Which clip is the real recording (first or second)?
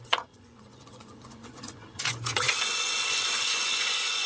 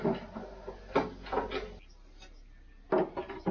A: second